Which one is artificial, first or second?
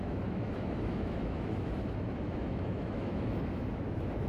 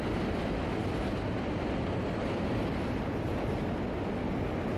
first